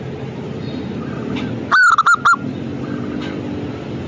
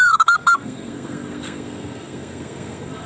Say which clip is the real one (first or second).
first